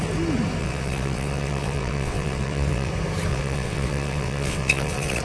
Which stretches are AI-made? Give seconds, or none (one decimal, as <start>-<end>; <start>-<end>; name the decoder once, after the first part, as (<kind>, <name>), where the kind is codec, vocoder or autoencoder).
0.6-2.9 (vocoder, WaveNeXt); 3.3-5.2